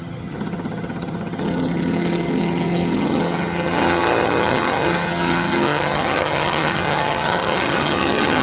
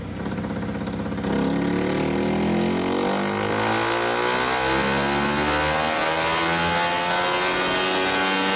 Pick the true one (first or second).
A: second